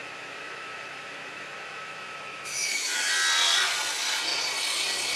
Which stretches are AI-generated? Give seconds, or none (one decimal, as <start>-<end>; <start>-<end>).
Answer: 0.0-3.1